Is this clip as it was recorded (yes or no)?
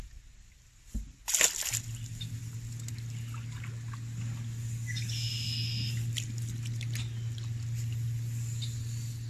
yes